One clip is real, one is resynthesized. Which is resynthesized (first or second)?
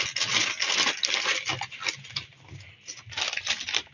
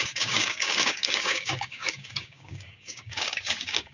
second